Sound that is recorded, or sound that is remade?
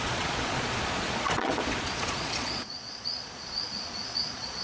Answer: remade